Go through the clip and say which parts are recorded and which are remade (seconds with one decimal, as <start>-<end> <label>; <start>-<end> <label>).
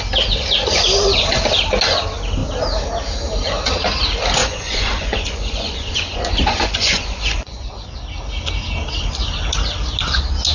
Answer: 0.0-4.4 recorded; 4.4-7.9 remade; 7.9-10.5 recorded